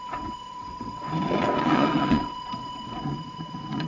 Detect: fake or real fake